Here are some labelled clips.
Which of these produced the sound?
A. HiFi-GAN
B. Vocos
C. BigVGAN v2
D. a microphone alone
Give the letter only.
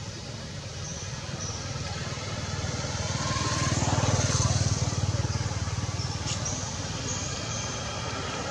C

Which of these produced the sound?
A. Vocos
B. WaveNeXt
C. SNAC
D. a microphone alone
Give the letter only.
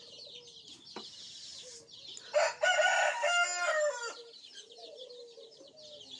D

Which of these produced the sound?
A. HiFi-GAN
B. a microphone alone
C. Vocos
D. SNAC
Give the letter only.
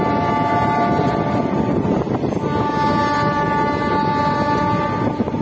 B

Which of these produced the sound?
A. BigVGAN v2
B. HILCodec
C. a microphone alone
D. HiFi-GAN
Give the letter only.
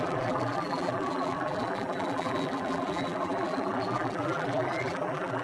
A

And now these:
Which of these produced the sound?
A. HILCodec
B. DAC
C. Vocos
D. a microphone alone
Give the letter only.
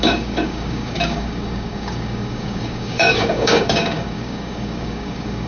B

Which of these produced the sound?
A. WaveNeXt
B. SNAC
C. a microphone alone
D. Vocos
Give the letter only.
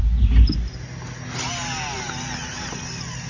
C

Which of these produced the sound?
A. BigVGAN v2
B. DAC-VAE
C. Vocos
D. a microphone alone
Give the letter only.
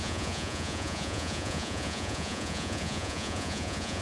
C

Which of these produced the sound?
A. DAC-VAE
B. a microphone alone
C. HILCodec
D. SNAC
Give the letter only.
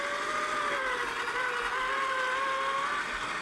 B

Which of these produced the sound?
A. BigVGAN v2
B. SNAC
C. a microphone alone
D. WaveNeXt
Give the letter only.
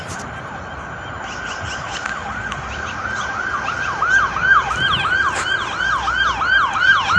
C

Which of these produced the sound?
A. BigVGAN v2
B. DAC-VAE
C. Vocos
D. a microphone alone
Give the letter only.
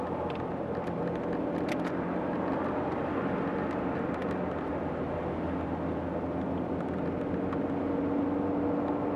D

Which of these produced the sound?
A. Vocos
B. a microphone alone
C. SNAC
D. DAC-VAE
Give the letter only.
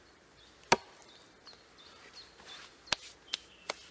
B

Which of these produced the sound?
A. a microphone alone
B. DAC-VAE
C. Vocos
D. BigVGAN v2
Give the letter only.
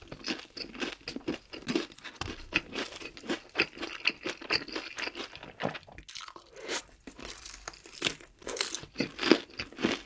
A